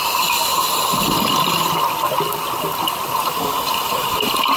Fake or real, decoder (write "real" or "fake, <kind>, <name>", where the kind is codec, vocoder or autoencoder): real